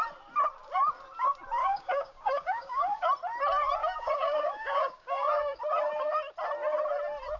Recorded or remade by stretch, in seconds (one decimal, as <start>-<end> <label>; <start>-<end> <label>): 0.0-1.6 recorded; 1.6-3.1 remade; 3.1-3.8 recorded; 3.8-5.6 remade; 5.6-7.4 recorded